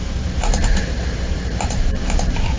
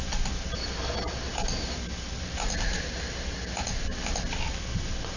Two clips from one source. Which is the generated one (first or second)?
first